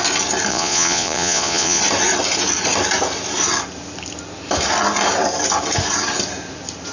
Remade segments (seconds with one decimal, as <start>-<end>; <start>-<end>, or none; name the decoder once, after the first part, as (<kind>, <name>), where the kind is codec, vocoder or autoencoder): 0.5-1.8 (vocoder, Vocos)